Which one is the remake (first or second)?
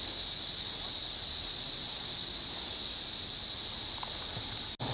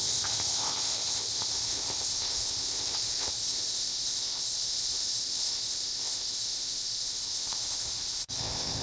second